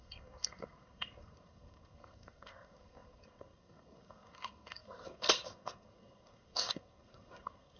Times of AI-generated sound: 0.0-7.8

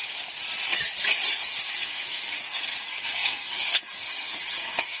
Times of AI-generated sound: 1.7-5.0

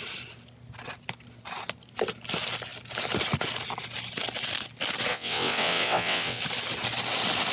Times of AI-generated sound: 5.1-6.4

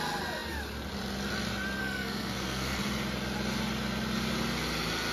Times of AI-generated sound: 1.8-2.8

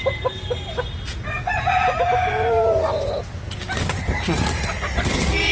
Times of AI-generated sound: none

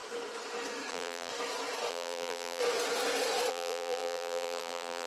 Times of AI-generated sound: 0.9-1.3; 1.9-2.6; 3.5-5.1